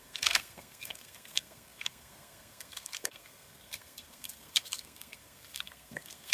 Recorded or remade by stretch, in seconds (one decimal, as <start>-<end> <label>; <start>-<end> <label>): 0.0-6.3 remade